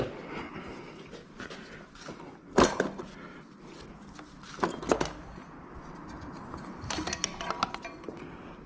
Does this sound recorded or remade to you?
recorded